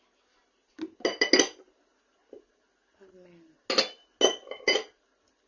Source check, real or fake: real